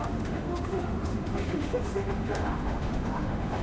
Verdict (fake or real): fake